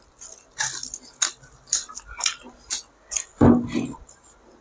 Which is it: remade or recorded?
recorded